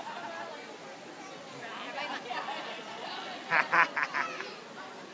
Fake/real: real